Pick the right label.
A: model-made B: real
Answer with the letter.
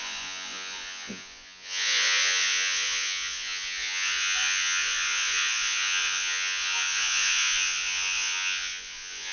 A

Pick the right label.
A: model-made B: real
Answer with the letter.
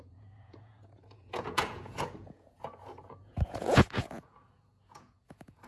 A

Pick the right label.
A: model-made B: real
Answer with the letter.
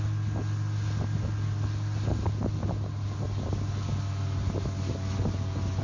B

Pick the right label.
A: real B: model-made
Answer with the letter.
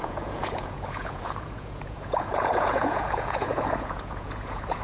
B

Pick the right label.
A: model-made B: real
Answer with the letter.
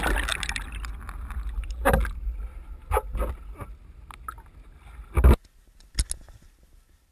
B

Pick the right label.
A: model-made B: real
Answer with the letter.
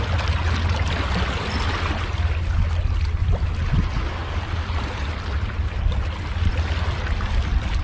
B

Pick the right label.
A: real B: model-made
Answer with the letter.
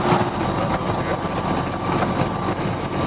A